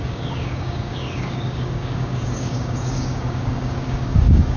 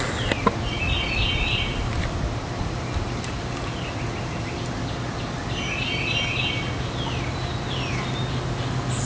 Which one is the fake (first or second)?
first